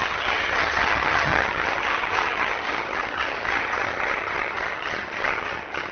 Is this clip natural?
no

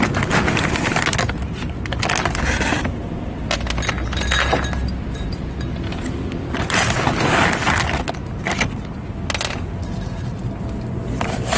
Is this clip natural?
yes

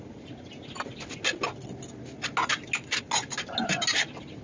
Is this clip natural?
yes